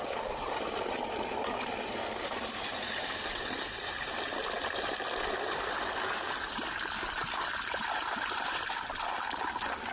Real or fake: real